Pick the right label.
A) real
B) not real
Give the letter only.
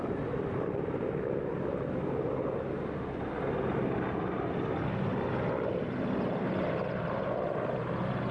A